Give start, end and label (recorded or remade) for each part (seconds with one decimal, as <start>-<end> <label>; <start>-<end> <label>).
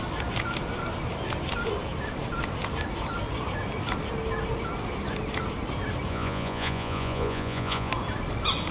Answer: 0.0-6.1 recorded; 6.1-7.9 remade; 7.9-8.7 recorded